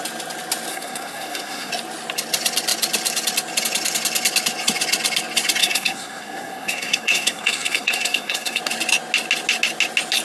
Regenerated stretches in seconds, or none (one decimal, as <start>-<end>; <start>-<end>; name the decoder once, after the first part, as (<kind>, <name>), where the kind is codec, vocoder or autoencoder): 0.7-1.7 (codec, SNAC); 5.6-8.6